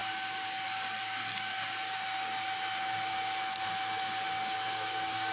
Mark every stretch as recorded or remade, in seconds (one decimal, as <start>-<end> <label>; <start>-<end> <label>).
0.0-1.0 recorded; 1.0-1.5 remade; 1.5-4.7 recorded; 4.7-5.3 remade